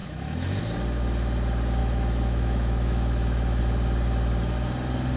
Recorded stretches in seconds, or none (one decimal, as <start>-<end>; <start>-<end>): 0.6-1.8; 3.6-5.2